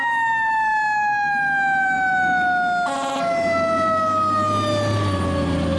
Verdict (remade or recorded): recorded